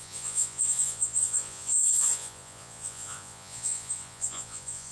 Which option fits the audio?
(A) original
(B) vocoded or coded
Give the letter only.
B